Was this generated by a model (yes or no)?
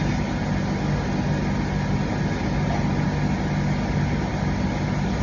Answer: no